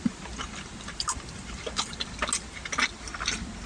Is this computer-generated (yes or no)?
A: no